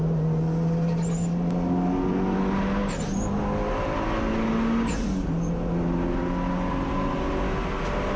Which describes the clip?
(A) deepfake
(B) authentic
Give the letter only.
B